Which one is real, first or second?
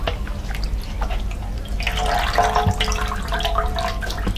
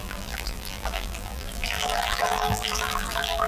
first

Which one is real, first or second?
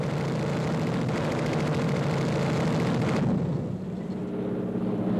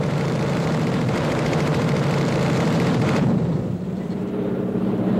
first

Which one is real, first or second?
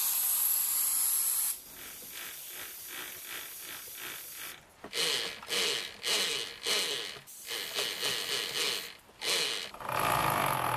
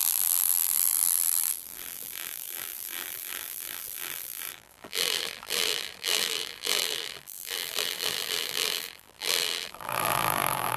first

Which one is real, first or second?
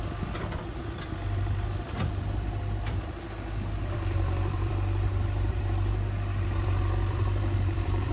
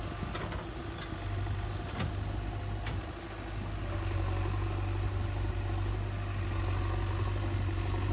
second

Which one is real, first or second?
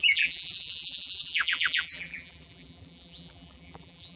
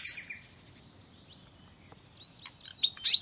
second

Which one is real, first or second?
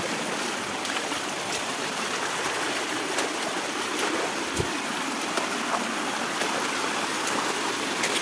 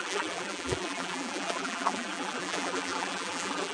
first